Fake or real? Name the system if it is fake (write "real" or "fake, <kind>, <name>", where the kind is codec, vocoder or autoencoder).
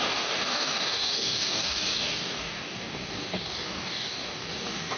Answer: fake, codec, DAC